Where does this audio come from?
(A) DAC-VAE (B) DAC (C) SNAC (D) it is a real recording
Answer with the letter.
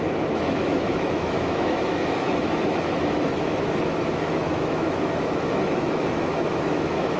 A